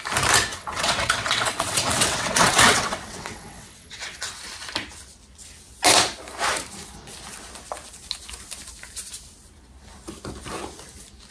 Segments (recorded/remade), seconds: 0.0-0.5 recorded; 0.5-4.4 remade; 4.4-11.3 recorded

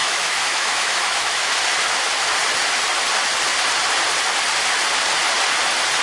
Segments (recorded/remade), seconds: 0.0-1.5 remade; 1.5-6.0 recorded

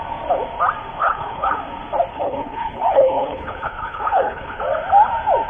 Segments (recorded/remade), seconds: 0.0-1.0 recorded; 1.0-1.6 remade; 1.6-2.1 recorded; 2.1-4.6 remade; 4.6-5.5 recorded

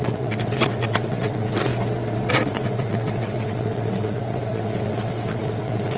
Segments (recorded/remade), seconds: 0.0-1.7 remade; 1.7-2.3 recorded; 2.3-6.0 remade

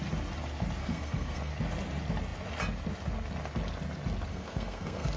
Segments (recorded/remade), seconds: 0.0-0.8 recorded; 0.8-1.5 remade; 1.5-4.3 recorded; 4.3-5.2 remade

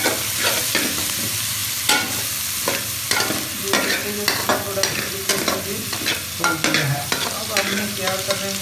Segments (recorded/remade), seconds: 0.0-8.6 recorded

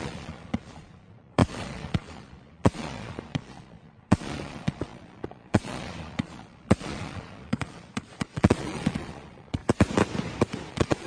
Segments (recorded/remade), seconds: 0.0-9.6 remade; 9.6-10.7 recorded; 10.7-11.1 remade

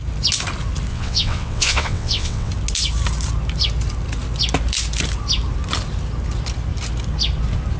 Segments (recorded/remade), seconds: 0.0-0.9 recorded; 0.9-2.5 remade; 2.5-7.8 recorded